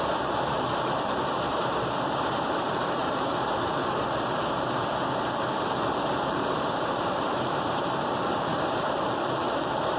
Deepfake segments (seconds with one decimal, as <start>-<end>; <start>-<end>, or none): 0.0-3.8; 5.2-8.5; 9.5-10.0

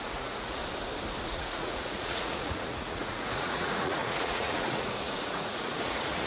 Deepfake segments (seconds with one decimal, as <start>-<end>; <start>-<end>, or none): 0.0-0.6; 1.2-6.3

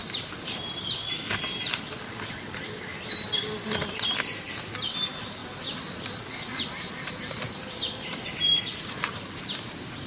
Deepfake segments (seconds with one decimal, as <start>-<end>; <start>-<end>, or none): 0.0-1.2; 2.9-4.0; 5.4-8.9

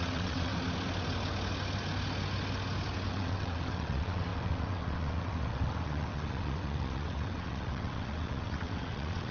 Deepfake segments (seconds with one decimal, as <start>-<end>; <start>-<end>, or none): 0.0-0.5; 3.1-9.3